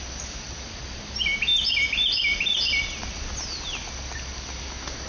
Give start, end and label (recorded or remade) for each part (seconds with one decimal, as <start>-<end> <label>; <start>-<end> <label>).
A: 0.0-5.1 recorded